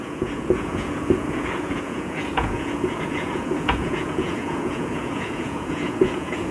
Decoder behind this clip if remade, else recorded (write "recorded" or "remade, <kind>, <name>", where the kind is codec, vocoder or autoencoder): remade, vocoder, Vocos